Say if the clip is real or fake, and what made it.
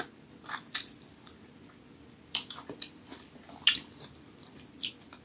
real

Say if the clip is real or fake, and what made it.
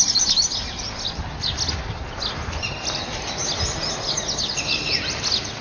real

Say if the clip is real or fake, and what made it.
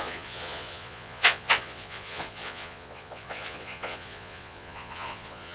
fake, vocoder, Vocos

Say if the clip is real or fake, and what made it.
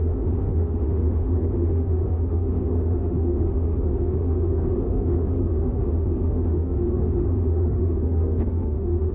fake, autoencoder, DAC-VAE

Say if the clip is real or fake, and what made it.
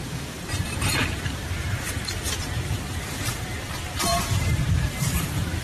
fake, vocoder, BigVGAN v2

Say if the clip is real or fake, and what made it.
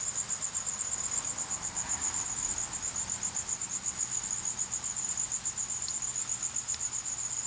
real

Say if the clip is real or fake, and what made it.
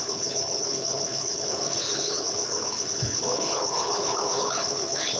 fake, codec, HILCodec